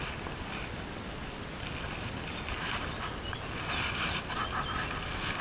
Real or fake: real